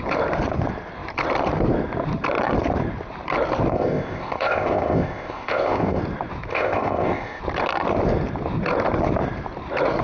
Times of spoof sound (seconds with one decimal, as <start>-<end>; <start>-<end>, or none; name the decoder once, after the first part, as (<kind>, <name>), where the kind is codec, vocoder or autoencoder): 3.7-6.0 (codec, ZipCodec); 6.5-7.4